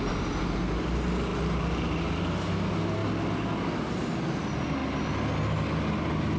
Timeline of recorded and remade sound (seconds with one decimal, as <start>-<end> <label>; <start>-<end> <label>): 0.0-6.4 recorded